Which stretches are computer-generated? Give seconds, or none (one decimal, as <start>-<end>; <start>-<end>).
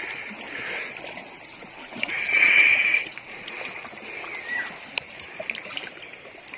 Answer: 1.5-3.6